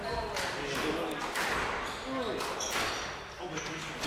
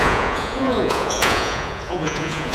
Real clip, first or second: first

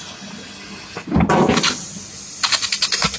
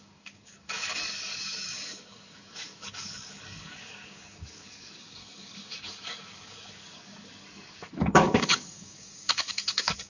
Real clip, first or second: first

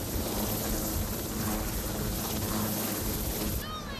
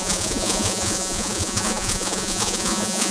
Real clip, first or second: first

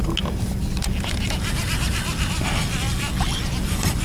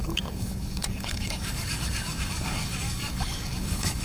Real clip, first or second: first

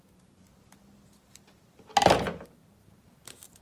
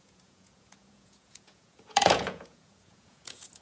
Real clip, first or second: first